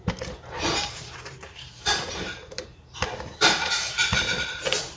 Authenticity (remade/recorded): remade